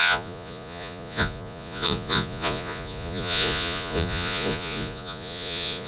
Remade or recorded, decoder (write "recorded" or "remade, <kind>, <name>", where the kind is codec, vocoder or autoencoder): remade, vocoder, Vocos